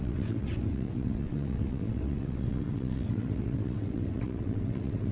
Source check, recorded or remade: remade